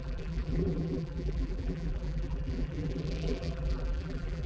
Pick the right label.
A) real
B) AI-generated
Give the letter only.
B